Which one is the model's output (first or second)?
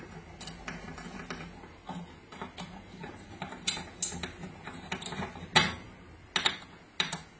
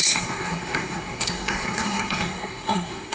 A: second